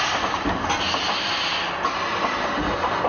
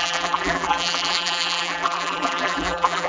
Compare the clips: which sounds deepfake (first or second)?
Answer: second